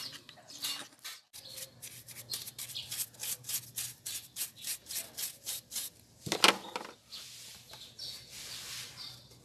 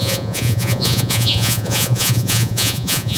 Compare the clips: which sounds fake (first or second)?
second